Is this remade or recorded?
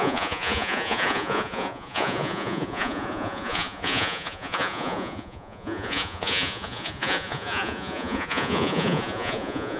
remade